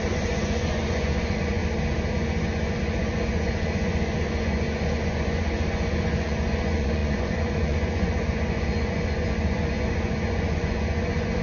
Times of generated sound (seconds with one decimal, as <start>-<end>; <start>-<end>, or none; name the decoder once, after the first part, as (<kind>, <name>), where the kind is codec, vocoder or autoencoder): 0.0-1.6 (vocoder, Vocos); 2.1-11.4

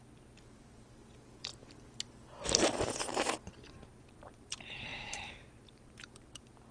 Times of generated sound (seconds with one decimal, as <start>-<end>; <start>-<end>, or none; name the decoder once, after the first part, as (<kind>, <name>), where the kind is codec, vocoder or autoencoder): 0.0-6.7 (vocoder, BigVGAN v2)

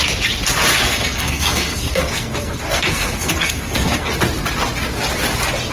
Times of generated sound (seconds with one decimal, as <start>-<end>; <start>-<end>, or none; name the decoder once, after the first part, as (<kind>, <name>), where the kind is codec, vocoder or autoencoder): 0.7-4.1 (codec, SNAC)

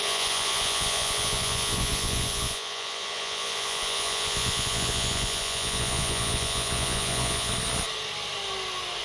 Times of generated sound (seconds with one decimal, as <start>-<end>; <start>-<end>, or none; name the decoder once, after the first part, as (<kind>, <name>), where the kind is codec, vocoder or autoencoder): 0.0-7.5 (vocoder, Vocos)

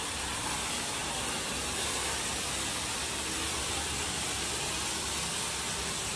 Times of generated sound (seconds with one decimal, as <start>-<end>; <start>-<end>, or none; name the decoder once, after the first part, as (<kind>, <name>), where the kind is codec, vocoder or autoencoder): none

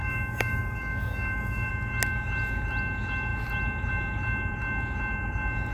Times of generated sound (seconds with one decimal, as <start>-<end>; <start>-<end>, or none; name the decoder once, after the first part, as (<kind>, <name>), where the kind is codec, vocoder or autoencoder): 0.0-1.7 (codec, DAC)